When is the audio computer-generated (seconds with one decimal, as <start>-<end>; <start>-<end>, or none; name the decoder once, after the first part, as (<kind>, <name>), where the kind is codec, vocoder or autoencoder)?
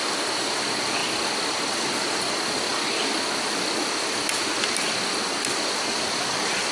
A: none